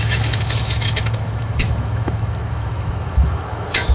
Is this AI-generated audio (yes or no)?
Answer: yes